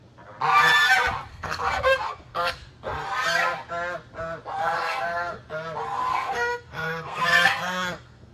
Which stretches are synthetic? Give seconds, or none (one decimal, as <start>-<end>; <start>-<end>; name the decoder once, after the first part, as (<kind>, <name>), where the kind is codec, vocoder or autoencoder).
1.3-2.7 (codec, SNAC); 4.6-5.4; 6.1-8.3